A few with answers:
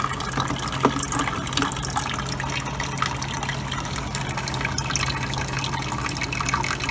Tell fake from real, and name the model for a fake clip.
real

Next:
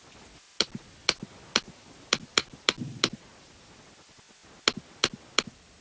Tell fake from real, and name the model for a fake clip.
real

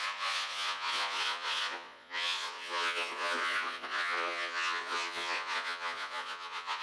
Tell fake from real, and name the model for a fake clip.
fake, vocoder, Vocos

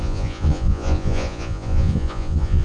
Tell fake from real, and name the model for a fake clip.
fake, vocoder, Vocos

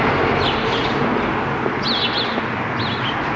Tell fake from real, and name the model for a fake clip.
real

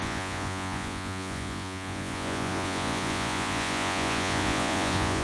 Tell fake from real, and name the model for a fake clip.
fake, vocoder, Vocos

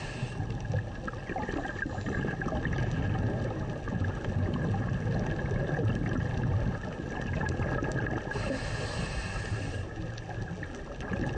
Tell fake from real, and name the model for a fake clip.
real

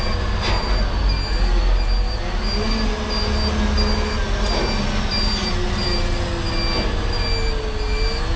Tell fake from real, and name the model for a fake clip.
real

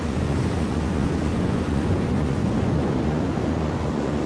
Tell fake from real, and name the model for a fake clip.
fake, vocoder, Vocos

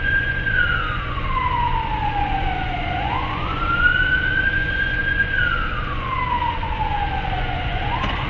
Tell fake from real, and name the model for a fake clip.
fake, vocoder, Vocos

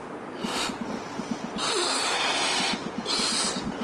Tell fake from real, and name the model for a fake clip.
real